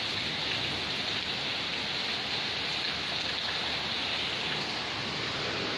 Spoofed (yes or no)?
no